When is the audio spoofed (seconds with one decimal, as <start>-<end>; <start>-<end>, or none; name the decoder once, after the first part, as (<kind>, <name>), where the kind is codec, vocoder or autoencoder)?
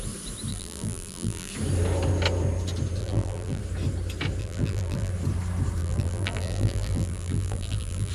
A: 0.5-1.5 (vocoder, BigVGAN v2); 3.0-3.6; 4.4-5.1; 5.8-8.1